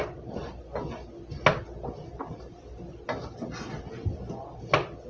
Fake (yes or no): no